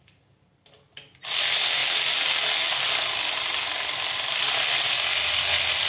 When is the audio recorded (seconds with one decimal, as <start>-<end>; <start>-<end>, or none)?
0.0-5.9